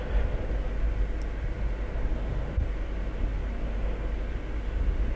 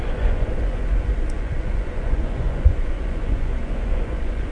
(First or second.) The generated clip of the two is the second